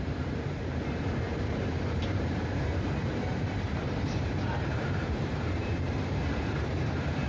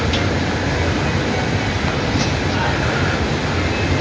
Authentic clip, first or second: second